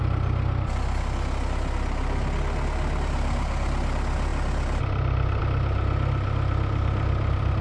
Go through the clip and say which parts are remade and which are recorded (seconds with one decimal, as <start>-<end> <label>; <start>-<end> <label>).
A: 0.0-7.6 recorded